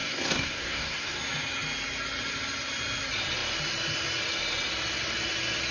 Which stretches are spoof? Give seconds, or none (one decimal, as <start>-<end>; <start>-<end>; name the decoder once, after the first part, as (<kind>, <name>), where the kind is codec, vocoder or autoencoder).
0.0-1.2 (codec, SNAC)